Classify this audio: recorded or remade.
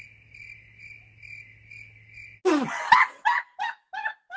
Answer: recorded